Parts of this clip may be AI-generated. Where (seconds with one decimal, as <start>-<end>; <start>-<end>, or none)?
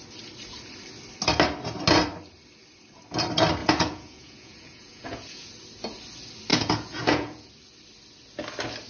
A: 3.6-5.5; 6.5-7.5